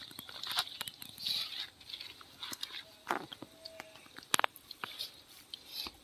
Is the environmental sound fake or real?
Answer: real